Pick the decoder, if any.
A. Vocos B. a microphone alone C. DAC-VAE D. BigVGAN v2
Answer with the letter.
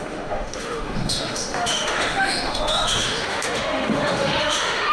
C